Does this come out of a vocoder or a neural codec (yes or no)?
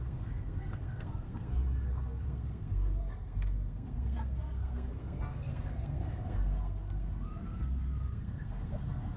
yes